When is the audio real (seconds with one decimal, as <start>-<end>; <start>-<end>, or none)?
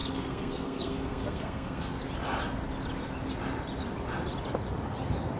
2.0-5.4